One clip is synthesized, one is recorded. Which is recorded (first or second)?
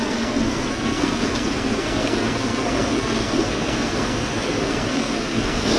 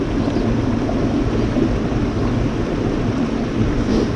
second